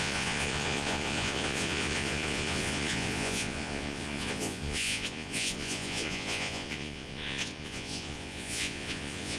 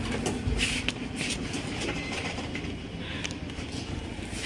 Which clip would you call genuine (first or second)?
second